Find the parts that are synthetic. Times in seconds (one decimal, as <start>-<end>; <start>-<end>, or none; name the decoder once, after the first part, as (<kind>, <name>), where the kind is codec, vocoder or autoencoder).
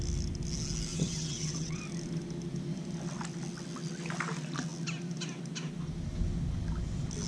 0.9-1.8 (vocoder, WaveNeXt)